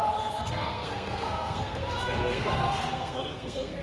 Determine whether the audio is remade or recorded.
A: remade